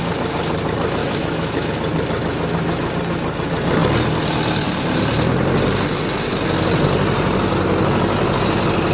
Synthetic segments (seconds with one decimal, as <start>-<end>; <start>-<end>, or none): 1.0-1.7; 2.2-2.9